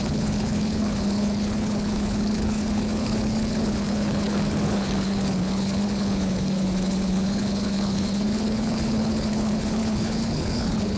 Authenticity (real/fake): fake